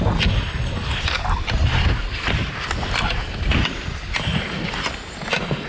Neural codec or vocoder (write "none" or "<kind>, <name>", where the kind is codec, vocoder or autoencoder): none